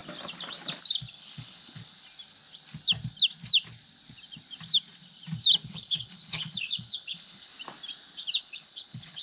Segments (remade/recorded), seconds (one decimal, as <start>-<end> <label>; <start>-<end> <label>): 0.0-1.1 recorded; 1.1-1.8 remade; 1.8-5.7 recorded; 5.7-7.5 remade; 7.5-8.4 recorded; 8.4-9.2 remade